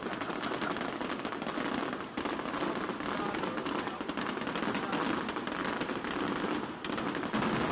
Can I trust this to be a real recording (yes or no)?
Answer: yes